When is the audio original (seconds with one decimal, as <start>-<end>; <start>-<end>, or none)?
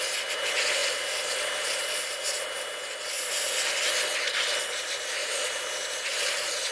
0.0-5.2